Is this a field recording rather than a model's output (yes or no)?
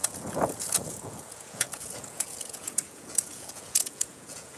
no